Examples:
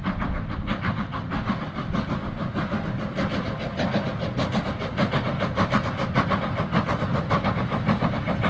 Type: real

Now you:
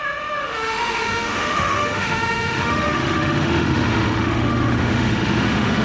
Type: fake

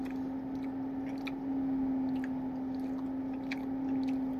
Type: real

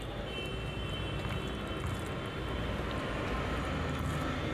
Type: real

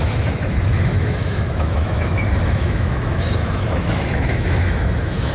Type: fake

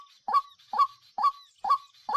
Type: real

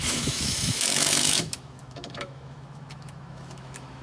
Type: fake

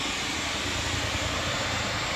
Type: real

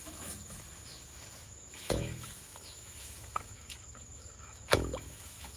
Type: fake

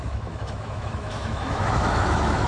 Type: fake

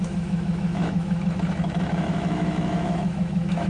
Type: fake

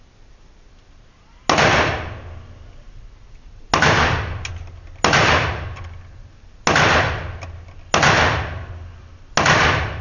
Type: real